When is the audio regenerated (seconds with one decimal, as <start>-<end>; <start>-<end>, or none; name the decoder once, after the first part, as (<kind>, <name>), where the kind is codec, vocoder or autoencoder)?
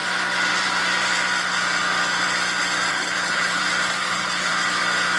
2.9-3.6 (codec, HILCodec); 4.0-4.5